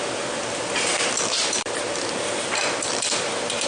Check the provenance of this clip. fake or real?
fake